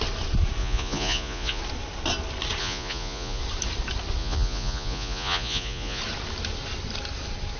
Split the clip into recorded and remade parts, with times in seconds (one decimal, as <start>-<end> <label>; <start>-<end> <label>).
0.0-0.6 recorded; 0.6-1.6 remade; 1.6-2.6 recorded; 2.6-3.4 remade; 3.4-4.2 recorded; 4.2-6.0 remade; 6.0-7.6 recorded